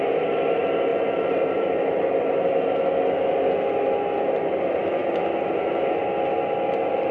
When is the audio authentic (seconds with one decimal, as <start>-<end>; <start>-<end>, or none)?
0.0-0.9; 1.5-7.1